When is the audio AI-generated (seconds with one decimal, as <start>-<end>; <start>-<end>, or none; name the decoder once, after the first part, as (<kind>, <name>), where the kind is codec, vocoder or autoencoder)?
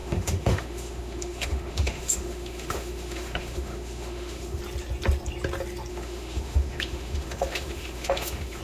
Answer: 0.0-4.6 (autoencoder, DAC-VAE); 5.9-8.6